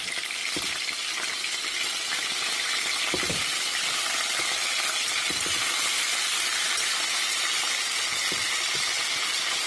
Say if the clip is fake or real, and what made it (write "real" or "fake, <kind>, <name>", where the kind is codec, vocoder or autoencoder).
real